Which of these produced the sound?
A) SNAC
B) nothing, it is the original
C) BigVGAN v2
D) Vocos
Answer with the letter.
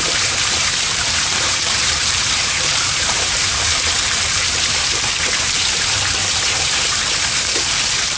C